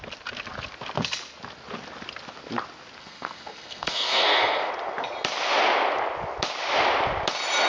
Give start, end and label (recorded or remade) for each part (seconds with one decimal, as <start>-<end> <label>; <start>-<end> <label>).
0.0-3.0 recorded; 3.0-4.7 remade; 4.7-7.7 recorded